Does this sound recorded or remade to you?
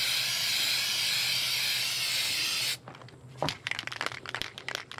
recorded